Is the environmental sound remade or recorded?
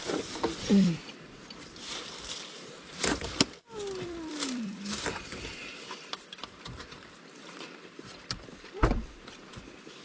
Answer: remade